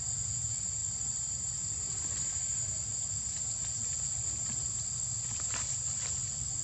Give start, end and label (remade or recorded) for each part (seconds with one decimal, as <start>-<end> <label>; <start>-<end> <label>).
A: 0.0-0.8 recorded; 0.8-2.6 remade; 2.6-6.6 recorded